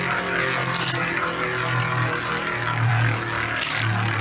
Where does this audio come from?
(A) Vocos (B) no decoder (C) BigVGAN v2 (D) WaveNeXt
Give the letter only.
C